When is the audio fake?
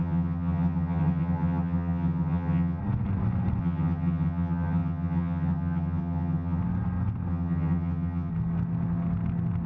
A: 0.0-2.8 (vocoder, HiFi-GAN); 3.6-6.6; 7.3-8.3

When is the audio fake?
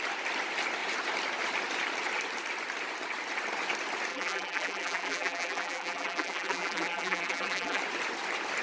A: 4.1-7.8 (vocoder, BigVGAN v2)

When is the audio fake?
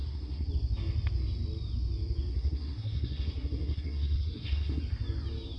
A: 0.0-0.5 (codec, SNAC); 2.3-4.8